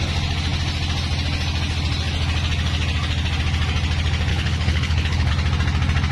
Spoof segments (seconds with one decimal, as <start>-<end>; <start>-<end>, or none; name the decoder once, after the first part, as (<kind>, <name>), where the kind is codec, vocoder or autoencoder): 4.3-5.3 (codec, HILCodec)

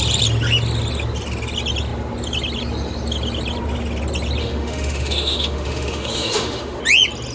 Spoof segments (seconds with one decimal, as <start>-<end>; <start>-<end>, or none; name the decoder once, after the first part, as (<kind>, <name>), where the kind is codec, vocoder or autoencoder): 4.4-6.8 (autoencoder, DAC-VAE)

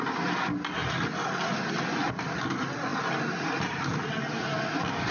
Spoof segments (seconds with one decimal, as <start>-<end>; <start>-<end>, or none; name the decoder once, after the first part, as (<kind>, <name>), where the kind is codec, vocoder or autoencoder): none

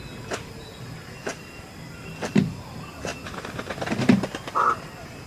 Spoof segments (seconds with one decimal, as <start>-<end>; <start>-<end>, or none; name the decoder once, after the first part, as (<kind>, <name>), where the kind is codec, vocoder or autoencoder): 1.3-2.3 (vocoder, BigVGAN v2)